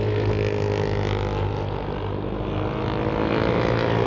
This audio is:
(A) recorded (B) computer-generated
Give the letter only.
A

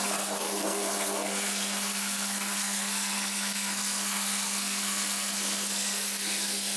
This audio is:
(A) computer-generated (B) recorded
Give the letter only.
A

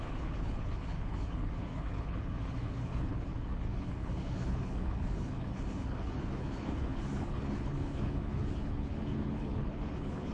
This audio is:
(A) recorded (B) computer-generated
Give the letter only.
B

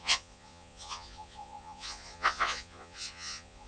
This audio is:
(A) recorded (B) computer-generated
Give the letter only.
B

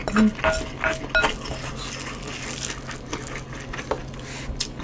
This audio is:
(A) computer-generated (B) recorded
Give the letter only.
B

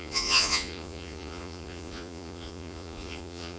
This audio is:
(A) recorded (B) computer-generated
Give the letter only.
B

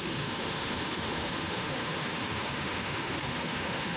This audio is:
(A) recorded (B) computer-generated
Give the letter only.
B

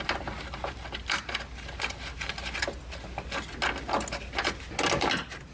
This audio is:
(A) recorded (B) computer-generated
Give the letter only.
A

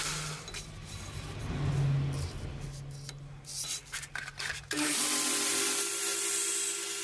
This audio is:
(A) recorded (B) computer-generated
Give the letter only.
A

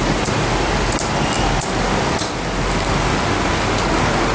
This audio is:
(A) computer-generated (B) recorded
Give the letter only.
B